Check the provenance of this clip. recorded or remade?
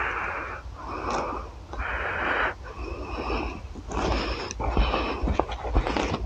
recorded